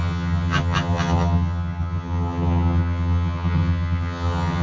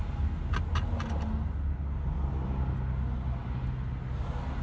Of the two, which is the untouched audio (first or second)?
second